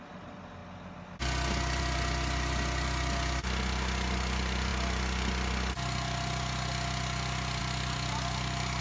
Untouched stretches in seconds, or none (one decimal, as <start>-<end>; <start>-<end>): 0.0-8.8